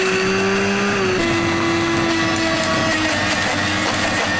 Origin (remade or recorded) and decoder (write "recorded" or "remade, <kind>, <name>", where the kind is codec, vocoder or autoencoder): recorded